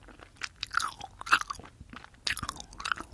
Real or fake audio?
real